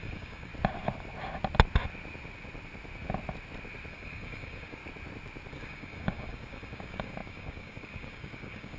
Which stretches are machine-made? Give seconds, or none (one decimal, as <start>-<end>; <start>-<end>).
0.0-0.5; 3.9-4.8; 5.5-8.8